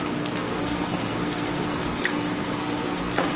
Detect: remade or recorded remade